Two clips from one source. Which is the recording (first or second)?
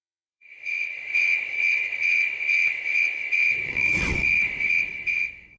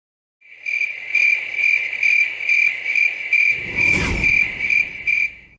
second